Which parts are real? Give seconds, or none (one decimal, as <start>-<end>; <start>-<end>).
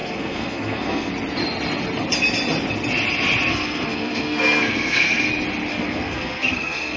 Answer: 1.1-3.5; 5.3-5.7